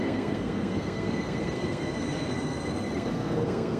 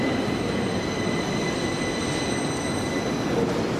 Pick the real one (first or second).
second